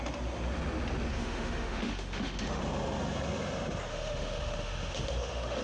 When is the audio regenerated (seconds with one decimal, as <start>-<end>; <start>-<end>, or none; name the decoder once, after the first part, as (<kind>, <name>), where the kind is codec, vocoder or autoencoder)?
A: 1.1-2.6 (autoencoder, DAC-VAE); 3.9-5.6